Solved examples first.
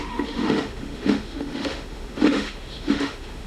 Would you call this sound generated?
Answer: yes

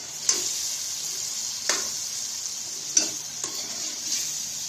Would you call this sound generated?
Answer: no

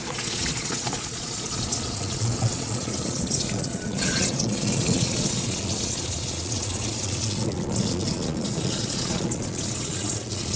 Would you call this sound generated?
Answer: yes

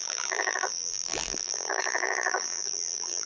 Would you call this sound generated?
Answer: yes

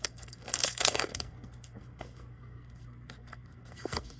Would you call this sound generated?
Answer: yes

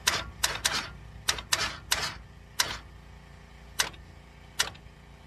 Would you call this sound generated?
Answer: no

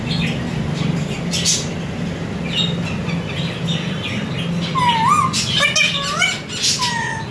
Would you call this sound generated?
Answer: no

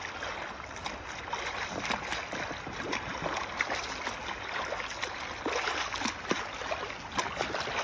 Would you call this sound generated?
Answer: no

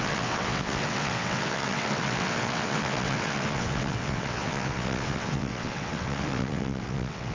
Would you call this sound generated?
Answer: yes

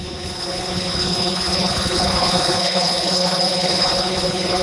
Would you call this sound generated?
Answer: yes